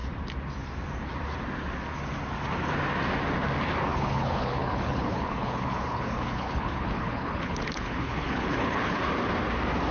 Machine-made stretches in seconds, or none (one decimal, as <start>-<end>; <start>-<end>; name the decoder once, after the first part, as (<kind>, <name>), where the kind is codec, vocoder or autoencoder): 3.9-9.0 (codec, HILCodec)